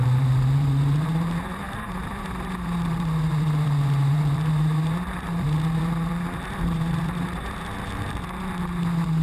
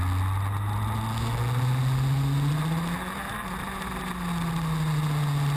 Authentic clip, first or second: second